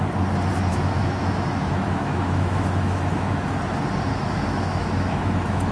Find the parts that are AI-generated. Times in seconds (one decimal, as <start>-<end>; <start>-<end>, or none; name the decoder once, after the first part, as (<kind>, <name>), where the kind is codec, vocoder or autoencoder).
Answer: 0.7-3.6 (autoencoder, DAC-VAE); 4.1-5.7